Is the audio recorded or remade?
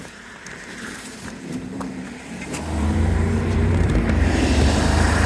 remade